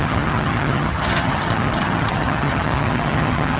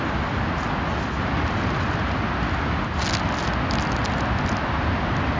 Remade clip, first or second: first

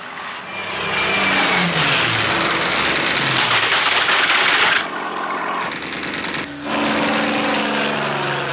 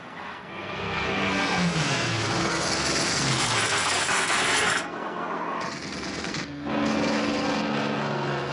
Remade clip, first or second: second